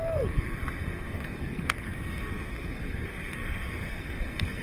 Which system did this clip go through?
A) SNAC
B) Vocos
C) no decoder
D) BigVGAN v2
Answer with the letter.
A